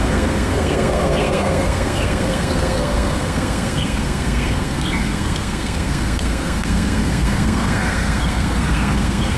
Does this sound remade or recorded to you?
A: remade